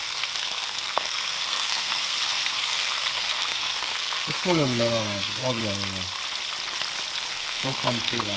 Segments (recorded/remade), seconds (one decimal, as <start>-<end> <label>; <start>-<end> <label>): 0.0-5.6 remade; 5.6-7.3 recorded; 7.3-8.4 remade